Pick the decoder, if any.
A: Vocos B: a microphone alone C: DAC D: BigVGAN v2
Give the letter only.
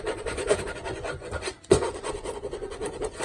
A